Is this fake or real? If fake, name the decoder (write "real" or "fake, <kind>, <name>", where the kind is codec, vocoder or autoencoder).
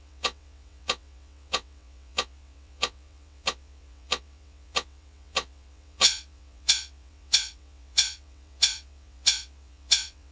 fake, vocoder, WaveNeXt